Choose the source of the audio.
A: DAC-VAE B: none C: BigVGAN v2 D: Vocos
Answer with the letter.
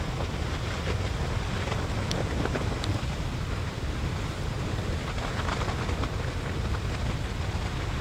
B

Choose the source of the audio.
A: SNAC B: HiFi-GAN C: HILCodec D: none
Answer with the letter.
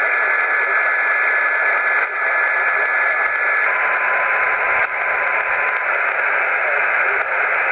D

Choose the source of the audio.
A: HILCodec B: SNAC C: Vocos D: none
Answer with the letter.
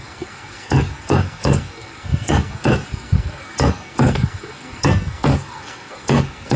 B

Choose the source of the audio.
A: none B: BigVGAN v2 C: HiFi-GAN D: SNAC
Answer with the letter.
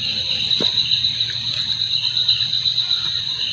A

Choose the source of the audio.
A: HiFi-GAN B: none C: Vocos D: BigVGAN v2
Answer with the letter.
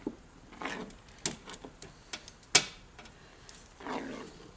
B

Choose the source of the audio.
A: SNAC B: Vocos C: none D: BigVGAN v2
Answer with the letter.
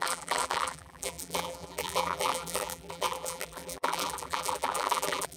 D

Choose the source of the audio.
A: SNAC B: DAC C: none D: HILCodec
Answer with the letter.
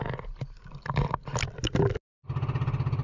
C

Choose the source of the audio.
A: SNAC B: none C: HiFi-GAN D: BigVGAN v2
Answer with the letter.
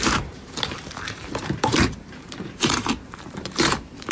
D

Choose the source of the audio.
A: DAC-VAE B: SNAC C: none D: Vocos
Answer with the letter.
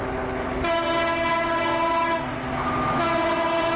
C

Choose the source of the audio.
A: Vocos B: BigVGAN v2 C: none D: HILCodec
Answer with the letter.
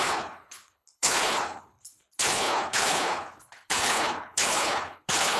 D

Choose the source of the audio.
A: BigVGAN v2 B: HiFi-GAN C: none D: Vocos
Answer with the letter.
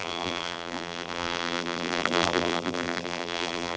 A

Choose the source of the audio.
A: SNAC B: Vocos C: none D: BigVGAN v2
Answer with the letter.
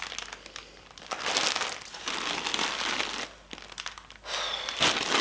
C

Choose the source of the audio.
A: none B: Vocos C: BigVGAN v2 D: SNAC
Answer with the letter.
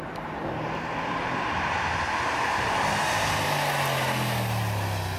A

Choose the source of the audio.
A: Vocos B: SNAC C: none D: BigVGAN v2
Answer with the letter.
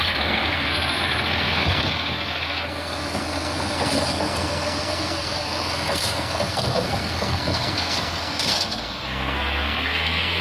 B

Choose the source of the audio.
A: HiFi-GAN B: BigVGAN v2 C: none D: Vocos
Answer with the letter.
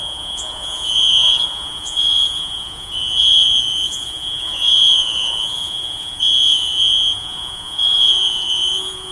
D